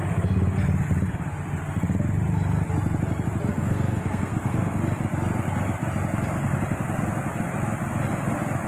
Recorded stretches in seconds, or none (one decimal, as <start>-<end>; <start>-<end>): 0.0-3.5; 4.8-8.7